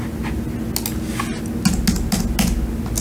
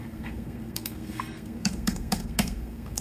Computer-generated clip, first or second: second